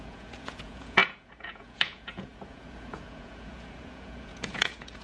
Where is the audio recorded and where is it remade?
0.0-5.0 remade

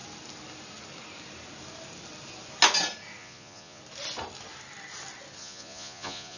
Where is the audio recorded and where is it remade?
0.0-3.2 recorded; 3.2-3.8 remade; 3.8-5.4 recorded; 5.4-6.4 remade

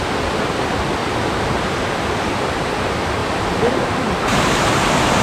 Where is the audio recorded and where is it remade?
0.0-1.0 recorded; 1.0-2.7 remade; 2.7-3.2 recorded; 3.2-3.7 remade; 3.7-5.2 recorded

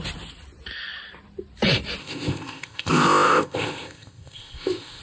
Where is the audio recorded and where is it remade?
0.0-2.0 recorded; 2.0-5.0 remade

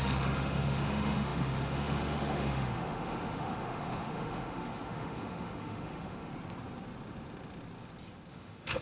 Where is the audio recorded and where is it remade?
0.0-6.3 remade; 6.3-8.3 recorded; 8.3-8.8 remade

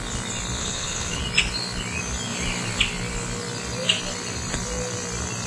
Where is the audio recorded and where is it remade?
0.0-0.6 recorded; 0.6-1.2 remade; 1.2-5.5 recorded

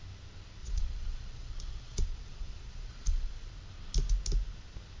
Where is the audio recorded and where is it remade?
0.0-0.6 recorded; 0.6-3.5 remade; 3.5-5.0 recorded